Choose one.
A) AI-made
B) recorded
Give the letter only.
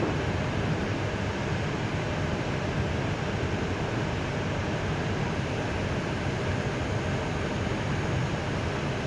B